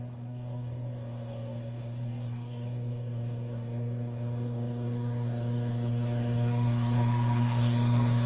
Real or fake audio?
fake